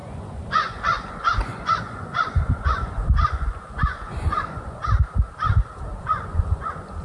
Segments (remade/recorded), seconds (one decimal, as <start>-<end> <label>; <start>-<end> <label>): 0.0-4.8 remade; 4.8-6.0 recorded; 6.0-7.0 remade